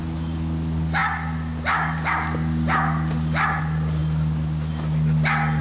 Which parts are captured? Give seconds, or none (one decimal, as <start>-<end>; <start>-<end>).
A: 0.0-5.6